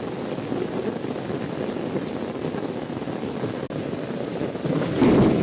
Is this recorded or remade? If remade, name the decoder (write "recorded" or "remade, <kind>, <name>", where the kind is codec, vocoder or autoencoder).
recorded